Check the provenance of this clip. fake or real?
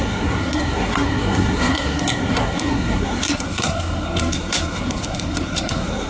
fake